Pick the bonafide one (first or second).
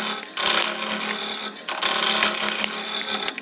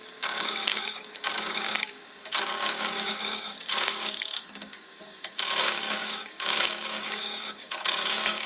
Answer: first